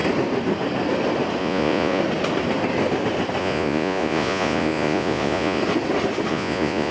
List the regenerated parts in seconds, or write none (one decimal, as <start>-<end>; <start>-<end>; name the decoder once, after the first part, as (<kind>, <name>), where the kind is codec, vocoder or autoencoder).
1.4-2.0 (vocoder, Vocos); 3.4-5.6; 6.3-6.9